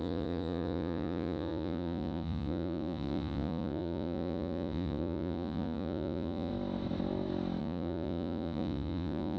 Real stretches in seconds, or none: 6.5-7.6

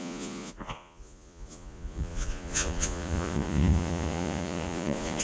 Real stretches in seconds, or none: none

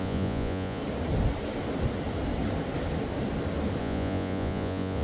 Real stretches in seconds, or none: 0.8-3.8

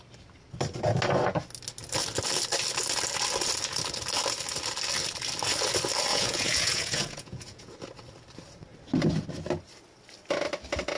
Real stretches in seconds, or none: 0.0-6.1; 7.7-11.0

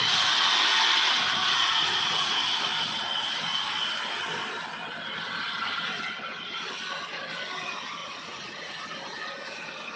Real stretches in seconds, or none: 0.0-1.4; 2.3-8.0; 8.8-10.0

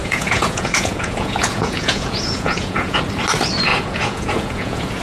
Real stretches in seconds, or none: 3.0-3.7